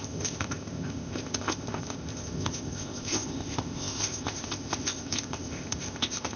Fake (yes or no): yes